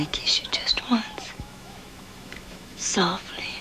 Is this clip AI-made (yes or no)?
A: yes